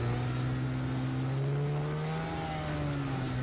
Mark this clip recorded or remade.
recorded